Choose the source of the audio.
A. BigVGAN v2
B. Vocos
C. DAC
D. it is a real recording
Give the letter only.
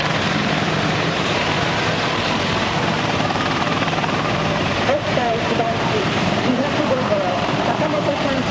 A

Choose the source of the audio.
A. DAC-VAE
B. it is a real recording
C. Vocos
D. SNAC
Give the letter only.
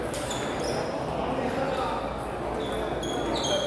B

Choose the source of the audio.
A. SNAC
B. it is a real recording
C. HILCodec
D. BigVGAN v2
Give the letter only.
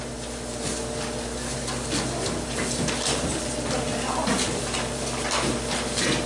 B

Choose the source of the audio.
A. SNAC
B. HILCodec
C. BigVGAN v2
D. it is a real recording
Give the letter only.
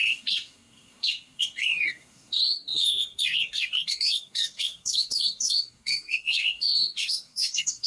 A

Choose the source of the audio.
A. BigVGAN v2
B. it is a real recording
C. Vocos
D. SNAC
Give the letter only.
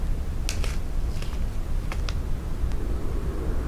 B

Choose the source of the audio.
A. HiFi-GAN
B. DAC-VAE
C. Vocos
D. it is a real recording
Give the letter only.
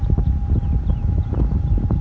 D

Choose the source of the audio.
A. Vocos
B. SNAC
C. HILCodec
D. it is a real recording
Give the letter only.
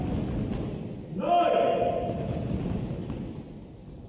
D